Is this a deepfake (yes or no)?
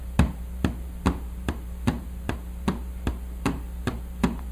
yes